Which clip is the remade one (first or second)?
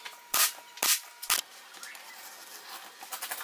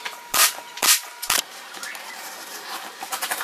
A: second